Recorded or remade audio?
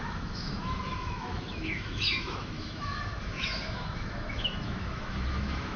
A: remade